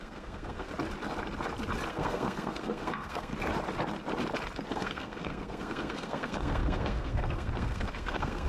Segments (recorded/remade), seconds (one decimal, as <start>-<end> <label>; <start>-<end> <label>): 0.0-0.7 remade; 0.7-1.9 recorded; 1.9-3.3 remade; 3.3-4.7 recorded; 4.7-8.5 remade